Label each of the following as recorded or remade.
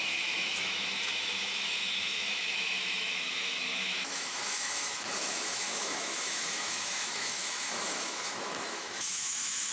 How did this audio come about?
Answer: remade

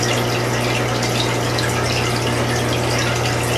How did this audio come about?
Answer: recorded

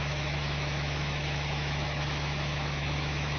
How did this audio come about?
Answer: remade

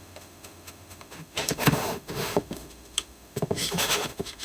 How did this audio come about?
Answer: remade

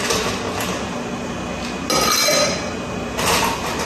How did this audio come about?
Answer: recorded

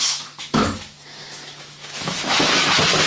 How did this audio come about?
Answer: remade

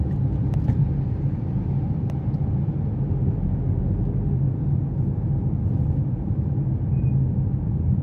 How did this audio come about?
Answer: recorded